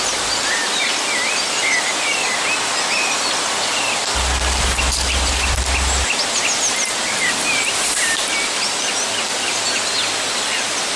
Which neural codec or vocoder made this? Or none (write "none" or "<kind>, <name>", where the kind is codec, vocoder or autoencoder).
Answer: none